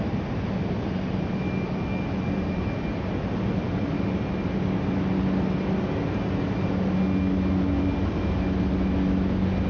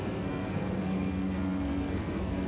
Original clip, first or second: first